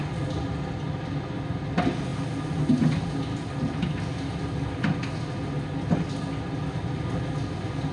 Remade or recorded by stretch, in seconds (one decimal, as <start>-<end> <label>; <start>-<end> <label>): 0.0-7.9 recorded